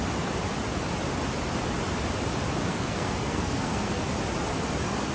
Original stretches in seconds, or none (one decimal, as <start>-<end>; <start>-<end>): 0.0-2.6; 4.0-5.1